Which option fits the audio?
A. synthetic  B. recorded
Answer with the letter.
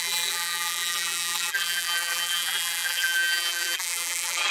A